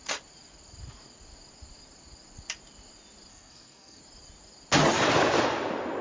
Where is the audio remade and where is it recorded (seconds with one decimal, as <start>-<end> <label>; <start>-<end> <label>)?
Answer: 0.0-3.3 recorded; 3.3-4.0 remade; 4.0-6.0 recorded